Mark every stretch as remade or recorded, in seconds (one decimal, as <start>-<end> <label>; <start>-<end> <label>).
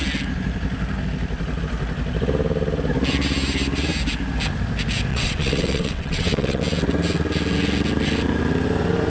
0.0-5.1 recorded; 5.1-6.6 remade; 6.6-9.1 recorded